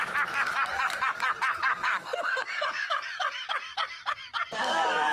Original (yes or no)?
no